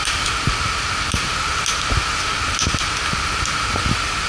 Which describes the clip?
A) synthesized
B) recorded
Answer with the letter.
B